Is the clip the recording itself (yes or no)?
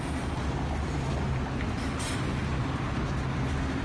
yes